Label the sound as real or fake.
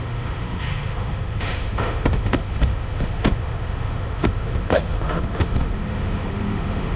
fake